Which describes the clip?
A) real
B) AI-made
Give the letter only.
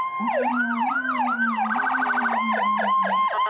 B